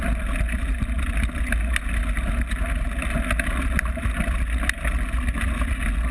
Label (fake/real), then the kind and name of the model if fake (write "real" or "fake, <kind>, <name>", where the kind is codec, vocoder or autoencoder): real